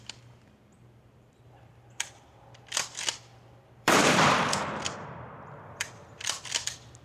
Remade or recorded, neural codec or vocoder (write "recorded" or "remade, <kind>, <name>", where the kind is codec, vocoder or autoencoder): remade, vocoder, BigVGAN v2